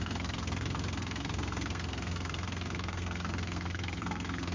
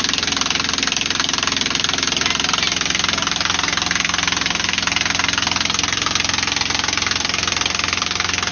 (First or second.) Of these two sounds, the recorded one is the second